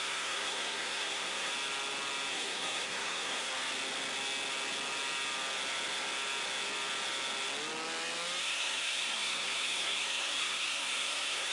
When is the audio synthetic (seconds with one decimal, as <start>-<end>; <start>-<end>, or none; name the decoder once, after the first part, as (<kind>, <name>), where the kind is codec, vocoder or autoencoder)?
0.0-1.5 (codec, SNAC); 2.3-3.5; 8.4-11.5